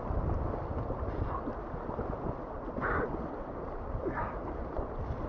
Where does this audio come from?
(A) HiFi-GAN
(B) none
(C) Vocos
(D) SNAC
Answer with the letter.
B